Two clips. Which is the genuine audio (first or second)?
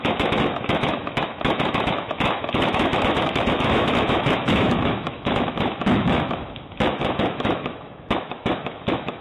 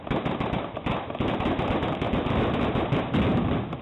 second